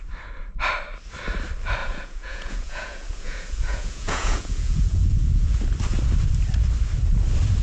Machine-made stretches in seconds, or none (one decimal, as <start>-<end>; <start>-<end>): 1.8-5.6